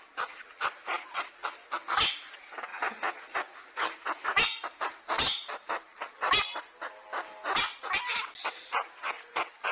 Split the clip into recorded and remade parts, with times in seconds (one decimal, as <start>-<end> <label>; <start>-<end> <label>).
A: 0.0-9.7 recorded